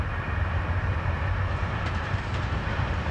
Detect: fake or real fake